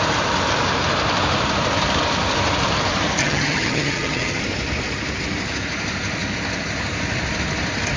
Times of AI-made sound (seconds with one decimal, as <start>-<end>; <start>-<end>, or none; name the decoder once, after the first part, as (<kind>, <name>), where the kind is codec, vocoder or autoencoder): 3.2-4.4 (vocoder, HiFi-GAN)